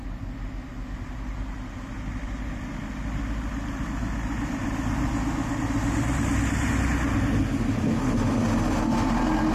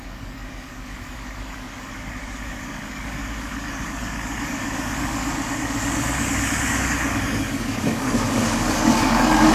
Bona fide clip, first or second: first